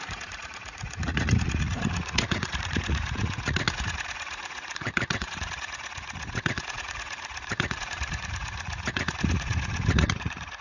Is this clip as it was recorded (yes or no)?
no